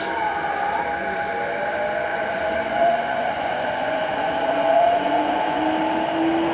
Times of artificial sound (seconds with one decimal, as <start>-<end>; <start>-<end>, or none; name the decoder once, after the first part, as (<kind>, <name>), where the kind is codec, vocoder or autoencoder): 2.1-5.6 (vocoder, Vocos)